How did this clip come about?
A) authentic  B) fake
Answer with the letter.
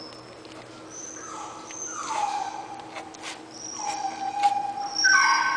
A